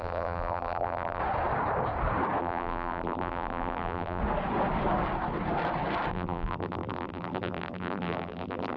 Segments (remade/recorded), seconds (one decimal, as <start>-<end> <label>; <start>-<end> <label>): 0.0-1.2 remade; 1.2-2.4 recorded; 2.4-4.2 remade; 4.2-6.1 recorded; 6.1-8.8 remade